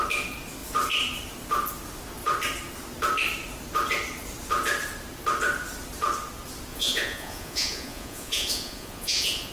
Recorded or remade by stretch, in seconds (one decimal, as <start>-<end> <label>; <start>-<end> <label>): 0.0-6.7 recorded; 6.7-9.5 remade